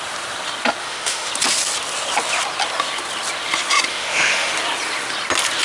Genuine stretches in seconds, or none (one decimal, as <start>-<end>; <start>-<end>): 0.0-0.8; 1.3-3.9; 4.5-5.6